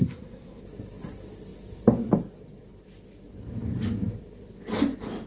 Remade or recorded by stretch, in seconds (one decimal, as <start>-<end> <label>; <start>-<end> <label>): 0.0-0.6 remade; 0.6-5.3 recorded